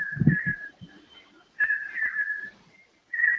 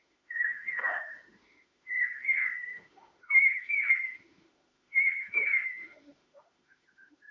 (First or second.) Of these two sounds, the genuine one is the first